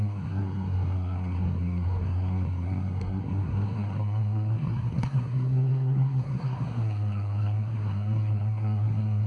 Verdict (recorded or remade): remade